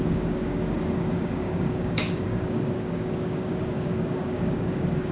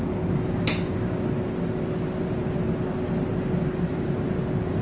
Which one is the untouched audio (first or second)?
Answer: second